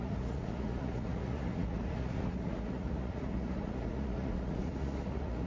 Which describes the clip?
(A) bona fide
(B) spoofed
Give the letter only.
B